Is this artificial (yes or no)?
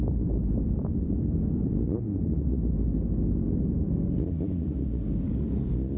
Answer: no